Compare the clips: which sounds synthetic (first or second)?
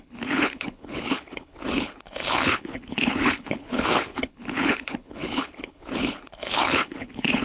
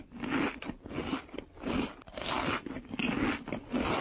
first